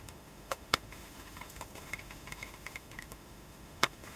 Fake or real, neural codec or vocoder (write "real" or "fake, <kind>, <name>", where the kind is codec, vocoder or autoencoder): fake, autoencoder, DAC-VAE